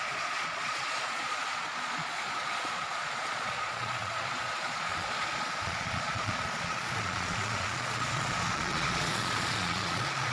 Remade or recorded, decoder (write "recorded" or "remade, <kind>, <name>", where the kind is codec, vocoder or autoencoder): remade, vocoder, Vocos